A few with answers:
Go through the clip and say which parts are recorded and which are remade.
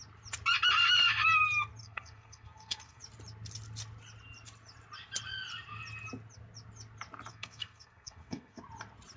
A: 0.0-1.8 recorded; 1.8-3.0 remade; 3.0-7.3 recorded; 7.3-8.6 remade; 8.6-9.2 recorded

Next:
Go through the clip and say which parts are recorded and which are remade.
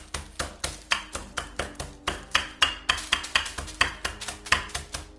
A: 0.0-5.2 recorded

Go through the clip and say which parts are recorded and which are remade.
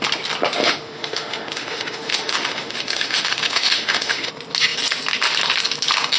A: 0.0-0.6 recorded; 0.6-4.3 remade; 4.3-6.2 recorded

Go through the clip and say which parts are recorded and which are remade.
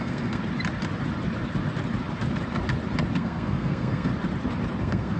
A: 0.0-0.4 remade; 0.4-3.2 recorded; 3.2-4.1 remade; 4.1-4.8 recorded; 4.8-5.2 remade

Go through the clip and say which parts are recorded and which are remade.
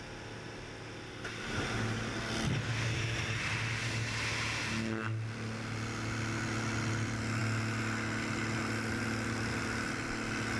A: 0.0-10.6 recorded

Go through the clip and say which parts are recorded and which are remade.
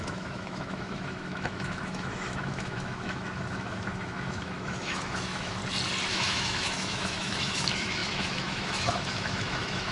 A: 0.0-5.6 remade; 5.6-6.1 recorded; 6.1-9.9 remade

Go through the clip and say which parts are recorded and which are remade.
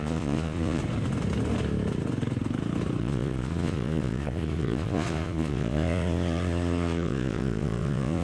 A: 0.0-0.8 remade; 0.8-3.0 recorded; 3.0-8.2 remade